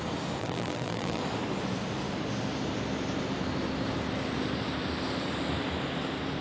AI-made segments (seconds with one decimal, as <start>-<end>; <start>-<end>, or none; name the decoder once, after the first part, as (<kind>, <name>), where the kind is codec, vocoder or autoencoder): 0.4-1.2 (vocoder, BigVGAN v2)